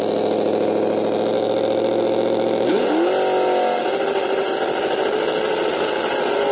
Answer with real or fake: real